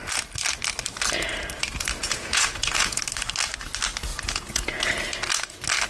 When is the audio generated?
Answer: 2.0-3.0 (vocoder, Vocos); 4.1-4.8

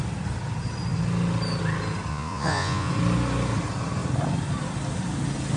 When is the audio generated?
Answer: 2.1-2.9 (vocoder, Vocos)